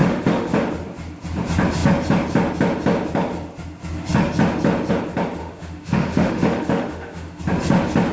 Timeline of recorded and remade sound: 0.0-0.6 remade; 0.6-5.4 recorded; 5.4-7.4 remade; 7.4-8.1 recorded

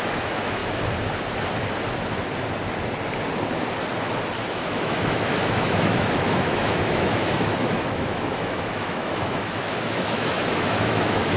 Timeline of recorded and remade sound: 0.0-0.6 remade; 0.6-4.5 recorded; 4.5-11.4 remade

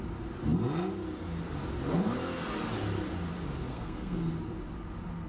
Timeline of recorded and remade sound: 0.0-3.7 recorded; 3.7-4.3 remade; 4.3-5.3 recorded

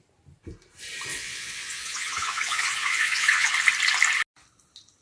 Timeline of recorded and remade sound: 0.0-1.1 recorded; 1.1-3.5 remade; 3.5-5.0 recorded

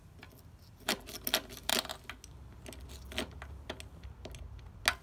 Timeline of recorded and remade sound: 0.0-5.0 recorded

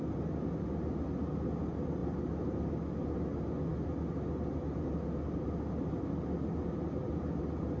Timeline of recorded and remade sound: 0.0-7.0 recorded; 7.0-7.8 remade

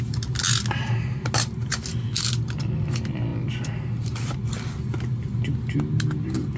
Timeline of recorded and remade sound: 0.0-6.6 recorded

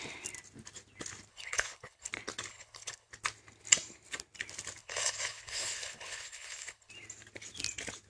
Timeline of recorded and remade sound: 0.0-1.3 recorded; 1.3-2.1 remade; 2.1-2.5 recorded; 2.5-3.1 remade; 3.1-4.8 recorded; 4.8-6.9 remade; 6.9-8.1 recorded